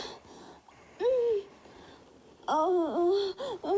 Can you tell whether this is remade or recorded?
recorded